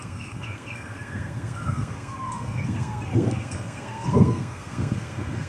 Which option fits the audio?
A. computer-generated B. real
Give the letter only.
A